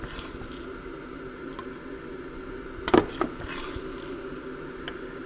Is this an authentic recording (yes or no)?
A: yes